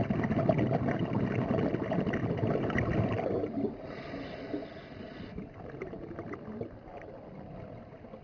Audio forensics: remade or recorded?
recorded